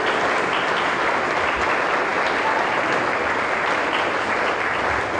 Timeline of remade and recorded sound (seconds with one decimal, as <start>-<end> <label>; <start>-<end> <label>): 0.0-5.2 recorded